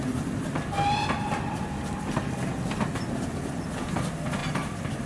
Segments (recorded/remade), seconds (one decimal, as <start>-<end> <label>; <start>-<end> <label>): 0.0-5.1 recorded